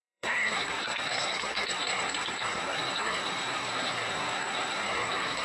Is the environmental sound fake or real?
fake